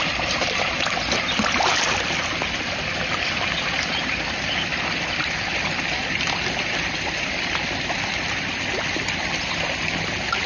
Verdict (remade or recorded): recorded